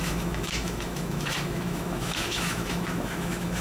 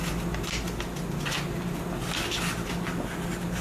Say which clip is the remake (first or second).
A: first